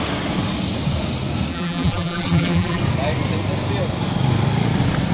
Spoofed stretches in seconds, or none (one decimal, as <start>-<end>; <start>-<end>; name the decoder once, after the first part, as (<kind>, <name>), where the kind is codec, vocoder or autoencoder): 1.5-2.8 (vocoder, BigVGAN v2)